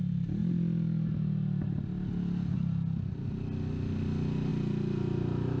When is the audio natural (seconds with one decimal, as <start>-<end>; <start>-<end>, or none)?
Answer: 0.0-5.6